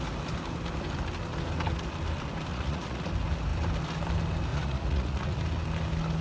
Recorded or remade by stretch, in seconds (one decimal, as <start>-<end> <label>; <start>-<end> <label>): 0.0-2.5 recorded; 2.5-3.1 remade; 3.1-4.5 recorded; 4.5-5.4 remade; 5.4-6.2 recorded